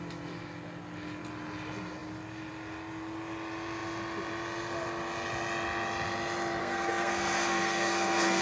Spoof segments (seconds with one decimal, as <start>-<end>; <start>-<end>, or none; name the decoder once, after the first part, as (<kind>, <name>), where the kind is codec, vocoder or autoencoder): 6.6-8.4 (codec, SNAC)